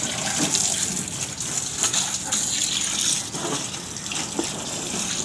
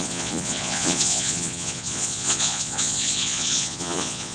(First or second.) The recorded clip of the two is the first